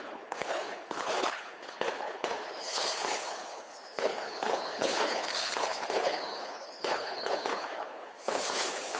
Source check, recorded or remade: remade